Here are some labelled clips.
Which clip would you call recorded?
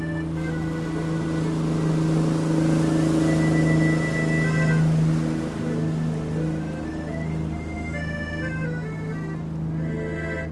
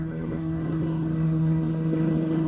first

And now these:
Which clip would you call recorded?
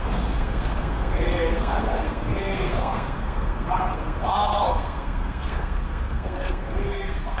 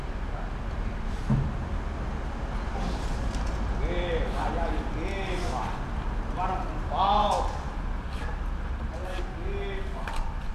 second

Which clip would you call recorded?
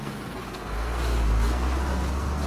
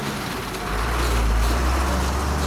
second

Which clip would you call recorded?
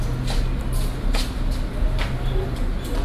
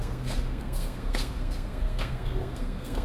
first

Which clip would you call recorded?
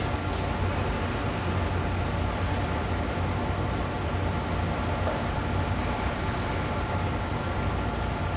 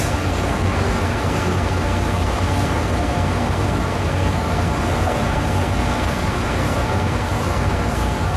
first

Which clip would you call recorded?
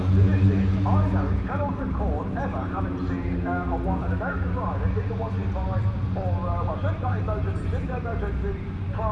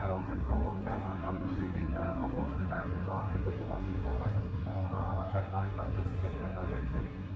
first